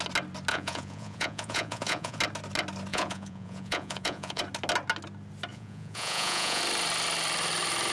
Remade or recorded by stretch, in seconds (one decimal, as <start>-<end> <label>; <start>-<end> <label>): 0.0-0.5 recorded; 0.5-2.2 remade; 2.2-2.9 recorded; 2.9-4.4 remade; 4.4-5.5 recorded; 5.5-6.6 remade; 6.6-7.9 recorded